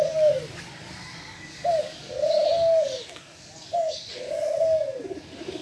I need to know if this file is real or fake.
fake